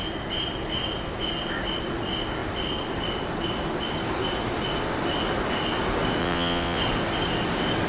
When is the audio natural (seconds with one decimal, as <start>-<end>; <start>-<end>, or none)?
0.0-6.2; 6.8-7.9

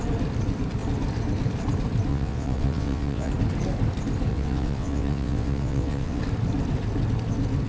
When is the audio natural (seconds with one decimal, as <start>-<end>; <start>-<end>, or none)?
0.0-2.1; 3.3-4.3; 6.2-7.7

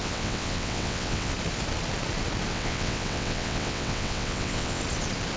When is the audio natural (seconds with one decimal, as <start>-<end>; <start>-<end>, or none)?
1.3-2.5; 4.8-5.4

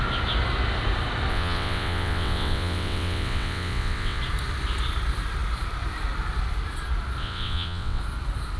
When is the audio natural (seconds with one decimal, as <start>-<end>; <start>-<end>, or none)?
0.0-1.3; 4.2-7.2; 8.0-8.6

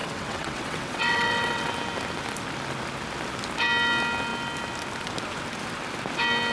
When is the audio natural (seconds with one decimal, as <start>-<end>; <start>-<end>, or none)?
1.7-6.5

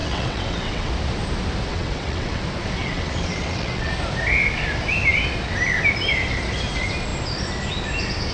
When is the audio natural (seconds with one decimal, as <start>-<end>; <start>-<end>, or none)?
0.9-1.7; 2.4-2.8; 3.9-8.3